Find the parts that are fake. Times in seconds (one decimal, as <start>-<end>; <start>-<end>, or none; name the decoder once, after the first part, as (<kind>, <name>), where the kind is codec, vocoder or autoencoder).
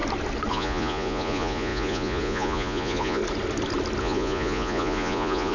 0.5-3.2 (vocoder, Vocos); 4.0-5.5